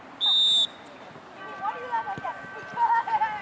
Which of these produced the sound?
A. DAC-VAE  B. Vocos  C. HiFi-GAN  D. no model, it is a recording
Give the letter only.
D